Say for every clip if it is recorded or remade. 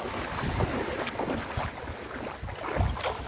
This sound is recorded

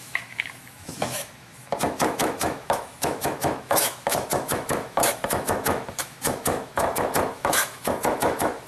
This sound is remade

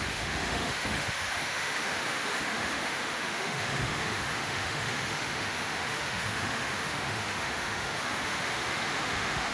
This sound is remade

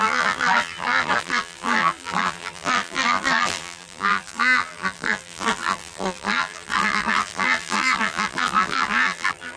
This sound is remade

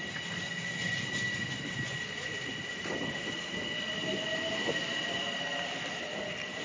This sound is recorded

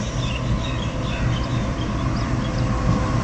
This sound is recorded